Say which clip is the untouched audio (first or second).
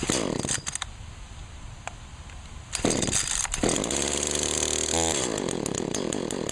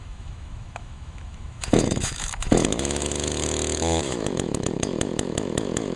first